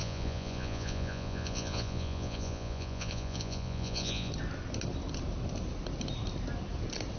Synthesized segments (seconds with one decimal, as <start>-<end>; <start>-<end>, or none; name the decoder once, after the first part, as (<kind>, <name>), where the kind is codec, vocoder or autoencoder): 0.0-4.3 (vocoder, Vocos)